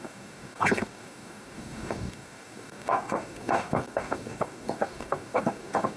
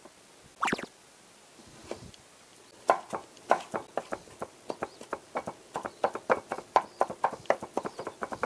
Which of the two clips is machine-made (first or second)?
first